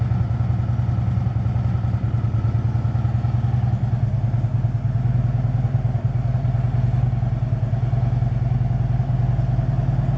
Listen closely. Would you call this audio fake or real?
real